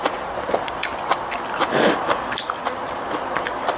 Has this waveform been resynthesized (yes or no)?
no